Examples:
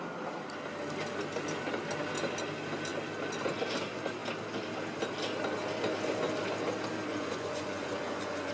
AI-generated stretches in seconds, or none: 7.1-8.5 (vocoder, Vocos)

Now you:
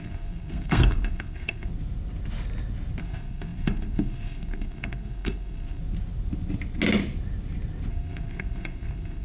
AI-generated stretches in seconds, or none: 0.0-1.7 (codec, SNAC); 3.0-5.8; 7.9-9.2

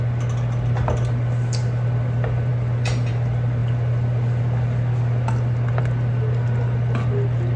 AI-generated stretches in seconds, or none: none

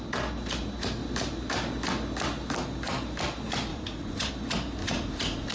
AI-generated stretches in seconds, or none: 3.7-4.3 (vocoder, Vocos); 4.8-5.5